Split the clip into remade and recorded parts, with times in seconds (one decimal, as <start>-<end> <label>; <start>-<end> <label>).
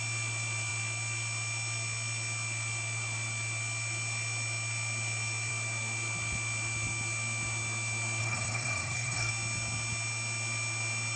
0.0-8.2 recorded; 8.2-9.3 remade; 9.3-11.2 recorded